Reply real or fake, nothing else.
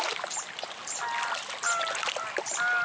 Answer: real